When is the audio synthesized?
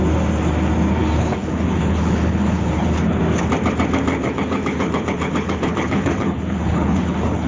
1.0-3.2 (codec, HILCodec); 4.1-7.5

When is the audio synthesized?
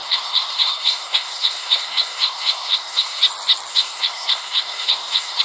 0.0-3.2 (codec, SNAC); 3.7-5.4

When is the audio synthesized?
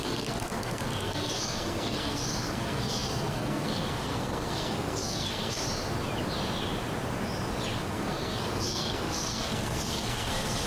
0.0-5.6 (codec, SNAC); 7.8-10.7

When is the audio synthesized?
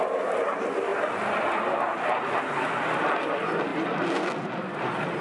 none